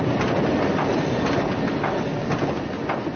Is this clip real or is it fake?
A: real